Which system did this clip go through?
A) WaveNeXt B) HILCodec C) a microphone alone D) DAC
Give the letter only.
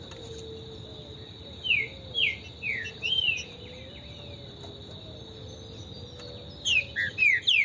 C